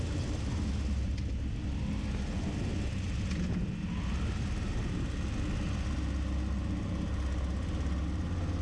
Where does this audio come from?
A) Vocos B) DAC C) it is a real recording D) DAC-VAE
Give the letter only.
C